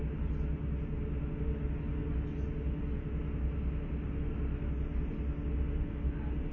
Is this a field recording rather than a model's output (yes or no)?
yes